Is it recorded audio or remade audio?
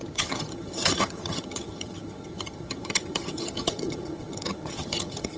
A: remade